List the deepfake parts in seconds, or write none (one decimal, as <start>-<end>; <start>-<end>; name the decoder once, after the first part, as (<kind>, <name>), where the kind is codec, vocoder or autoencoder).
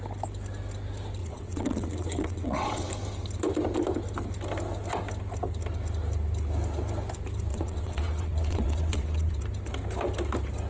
1.2-2.9 (vocoder, WaveNeXt); 7.5-9.3